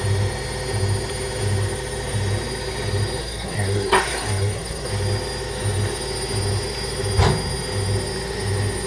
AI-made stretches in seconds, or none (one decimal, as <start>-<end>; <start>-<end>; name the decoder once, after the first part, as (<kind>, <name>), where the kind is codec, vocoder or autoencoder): 3.2-4.9 (codec, SNAC)